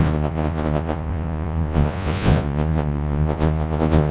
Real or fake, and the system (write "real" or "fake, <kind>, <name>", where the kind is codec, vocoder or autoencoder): fake, vocoder, Vocos